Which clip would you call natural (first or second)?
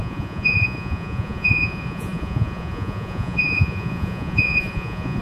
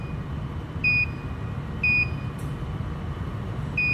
second